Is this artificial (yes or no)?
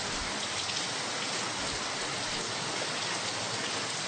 no